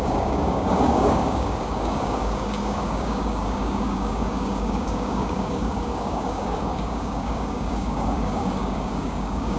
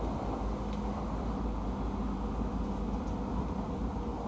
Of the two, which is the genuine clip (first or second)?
second